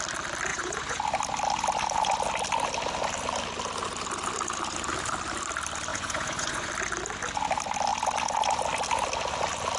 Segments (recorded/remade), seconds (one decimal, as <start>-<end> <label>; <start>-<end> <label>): 0.0-0.5 recorded; 0.5-1.0 remade; 1.0-5.9 recorded; 5.9-6.7 remade; 6.7-9.8 recorded